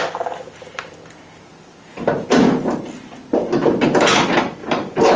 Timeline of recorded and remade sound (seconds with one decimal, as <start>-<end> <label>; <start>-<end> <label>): 0.0-1.9 recorded; 1.9-2.8 remade; 2.8-4.6 recorded; 4.6-5.2 remade